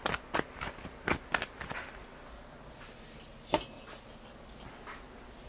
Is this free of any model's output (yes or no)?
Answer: yes